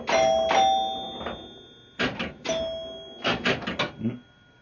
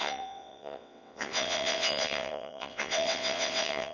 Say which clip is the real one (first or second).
first